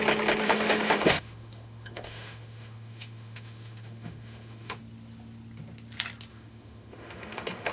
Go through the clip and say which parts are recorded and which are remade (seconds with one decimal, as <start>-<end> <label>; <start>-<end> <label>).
0.0-0.4 recorded; 0.4-4.8 remade; 4.8-6.3 recorded; 6.3-7.7 remade